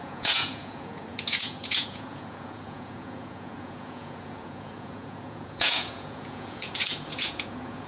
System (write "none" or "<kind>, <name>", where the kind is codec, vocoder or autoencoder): vocoder, Vocos